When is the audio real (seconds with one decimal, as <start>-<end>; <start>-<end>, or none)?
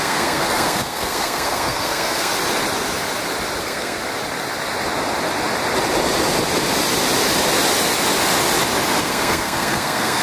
2.3-3.6; 4.0-9.0